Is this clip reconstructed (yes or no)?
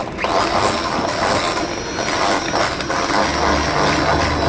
no